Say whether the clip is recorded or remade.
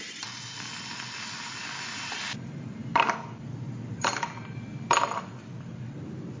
recorded